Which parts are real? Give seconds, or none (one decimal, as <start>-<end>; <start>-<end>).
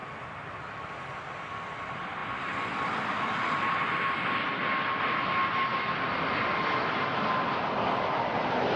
0.0-8.8